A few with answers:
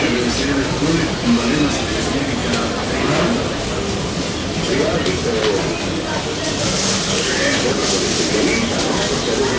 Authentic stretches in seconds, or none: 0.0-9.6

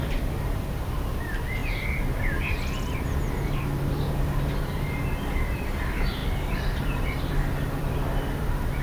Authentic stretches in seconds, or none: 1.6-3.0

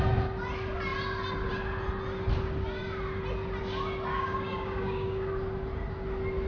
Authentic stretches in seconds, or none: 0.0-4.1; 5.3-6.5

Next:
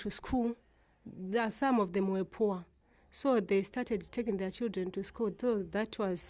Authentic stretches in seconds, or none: 0.0-6.3

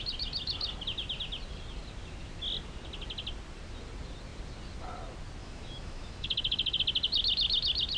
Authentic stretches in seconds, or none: 0.0-5.4; 6.8-8.0

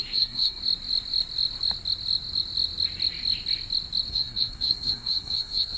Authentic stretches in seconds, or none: 0.6-4.1